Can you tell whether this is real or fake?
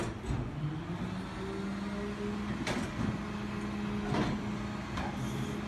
real